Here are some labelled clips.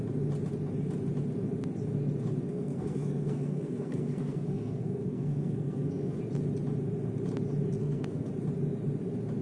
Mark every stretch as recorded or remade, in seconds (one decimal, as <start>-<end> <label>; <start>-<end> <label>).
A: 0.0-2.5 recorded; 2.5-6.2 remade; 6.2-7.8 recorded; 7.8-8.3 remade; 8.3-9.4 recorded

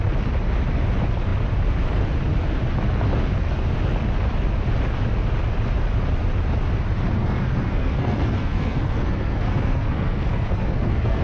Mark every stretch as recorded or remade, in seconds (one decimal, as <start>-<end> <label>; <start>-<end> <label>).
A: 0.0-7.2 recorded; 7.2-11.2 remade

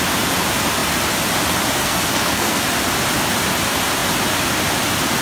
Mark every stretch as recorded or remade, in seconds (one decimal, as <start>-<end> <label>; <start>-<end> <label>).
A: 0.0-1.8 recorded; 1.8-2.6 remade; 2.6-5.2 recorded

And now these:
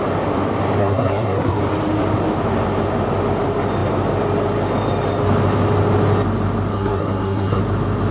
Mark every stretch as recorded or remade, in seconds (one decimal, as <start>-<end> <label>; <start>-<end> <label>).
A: 0.0-0.8 recorded; 0.8-1.6 remade; 1.6-6.7 recorded; 6.7-7.6 remade; 7.6-8.1 recorded

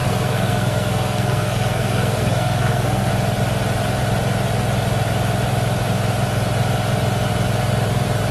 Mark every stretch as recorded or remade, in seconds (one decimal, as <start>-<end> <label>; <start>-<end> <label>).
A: 0.0-3.1 remade; 3.1-8.3 recorded

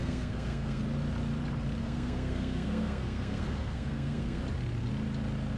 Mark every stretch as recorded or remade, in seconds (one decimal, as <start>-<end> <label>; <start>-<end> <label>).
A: 0.0-0.8 remade; 0.8-1.8 recorded; 1.8-4.4 remade; 4.4-5.6 recorded

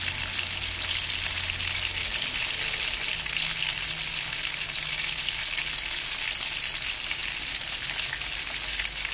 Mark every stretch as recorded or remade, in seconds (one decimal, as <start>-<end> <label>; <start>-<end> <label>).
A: 0.0-9.1 recorded

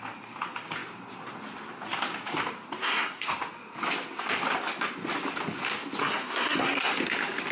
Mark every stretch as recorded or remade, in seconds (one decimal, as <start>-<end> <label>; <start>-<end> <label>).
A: 0.0-2.8 recorded; 2.8-3.3 remade; 3.3-6.0 recorded; 6.0-6.9 remade; 6.9-7.5 recorded